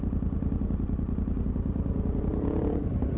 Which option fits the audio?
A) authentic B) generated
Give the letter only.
A